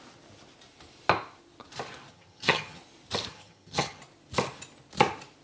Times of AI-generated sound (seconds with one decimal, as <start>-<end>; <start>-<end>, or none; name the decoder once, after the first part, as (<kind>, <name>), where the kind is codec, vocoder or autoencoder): 2.1-2.8 (vocoder, HiFi-GAN); 3.3-4.0